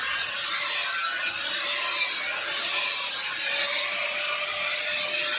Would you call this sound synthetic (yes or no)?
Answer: no